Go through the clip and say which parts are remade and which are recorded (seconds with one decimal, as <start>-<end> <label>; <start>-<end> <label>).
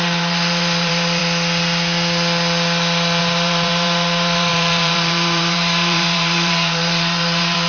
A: 0.0-1.2 remade; 1.2-3.2 recorded; 3.2-7.7 remade